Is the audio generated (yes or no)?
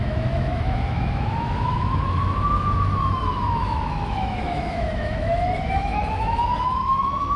yes